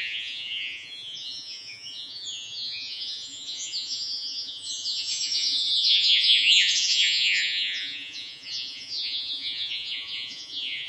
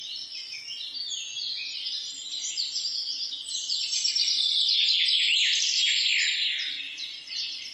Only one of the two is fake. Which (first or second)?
first